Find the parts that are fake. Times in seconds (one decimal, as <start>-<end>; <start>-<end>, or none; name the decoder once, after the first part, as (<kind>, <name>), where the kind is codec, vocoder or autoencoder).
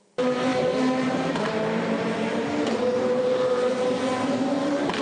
0.0-5.0 (vocoder, BigVGAN v2)